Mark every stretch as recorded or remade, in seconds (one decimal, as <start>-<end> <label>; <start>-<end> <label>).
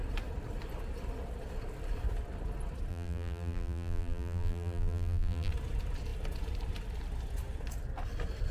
0.0-2.9 recorded; 2.9-5.5 remade; 5.5-8.5 recorded